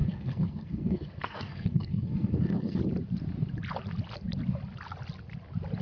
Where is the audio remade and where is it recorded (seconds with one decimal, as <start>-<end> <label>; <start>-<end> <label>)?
0.0-2.8 remade; 2.8-5.8 recorded